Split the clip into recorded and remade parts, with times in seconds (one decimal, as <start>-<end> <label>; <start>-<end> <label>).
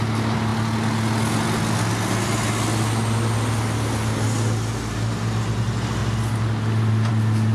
0.0-7.5 recorded